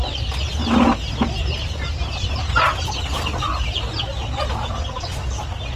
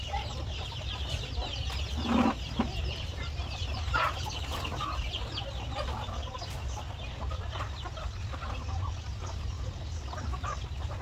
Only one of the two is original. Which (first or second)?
first